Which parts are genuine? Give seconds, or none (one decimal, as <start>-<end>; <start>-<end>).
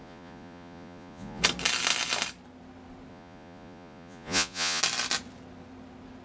1.4-3.1; 4.8-6.2